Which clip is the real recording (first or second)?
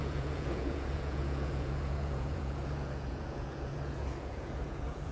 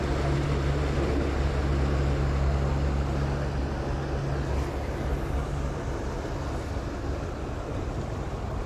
second